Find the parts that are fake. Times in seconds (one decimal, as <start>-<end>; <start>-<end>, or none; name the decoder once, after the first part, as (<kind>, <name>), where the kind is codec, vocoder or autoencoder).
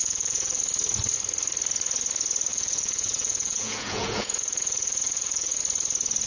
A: 0.0-0.6 (vocoder, Vocos); 2.5-5.6